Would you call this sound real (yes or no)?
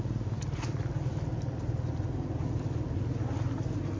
yes